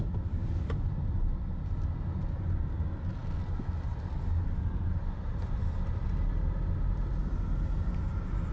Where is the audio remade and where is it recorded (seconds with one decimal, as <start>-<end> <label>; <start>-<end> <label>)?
0.0-8.5 recorded